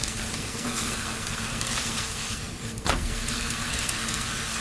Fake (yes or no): yes